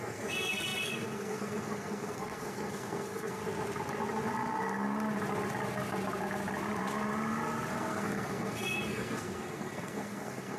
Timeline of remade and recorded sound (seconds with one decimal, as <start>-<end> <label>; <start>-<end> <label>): 0.0-3.4 remade; 3.4-7.7 recorded; 7.7-10.6 remade